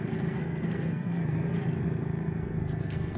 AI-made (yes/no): yes